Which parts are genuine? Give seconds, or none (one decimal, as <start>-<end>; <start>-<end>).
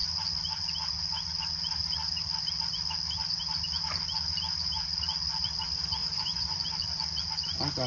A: 0.0-6.0; 6.6-7.9